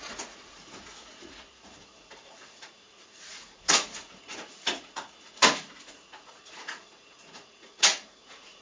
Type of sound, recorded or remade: remade